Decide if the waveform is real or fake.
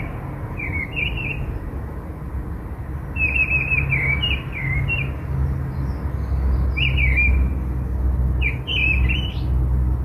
real